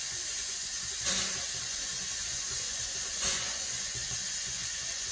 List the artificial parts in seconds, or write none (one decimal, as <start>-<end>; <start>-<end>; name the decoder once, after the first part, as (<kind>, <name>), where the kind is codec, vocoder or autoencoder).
0.0-0.7 (vocoder, Vocos); 1.6-5.1